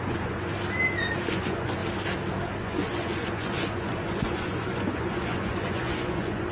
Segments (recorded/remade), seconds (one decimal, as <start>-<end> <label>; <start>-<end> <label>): 0.0-0.5 remade; 0.5-1.3 recorded; 1.3-1.8 remade; 1.8-2.6 recorded; 2.6-6.5 remade